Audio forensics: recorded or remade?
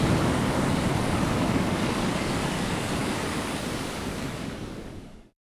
remade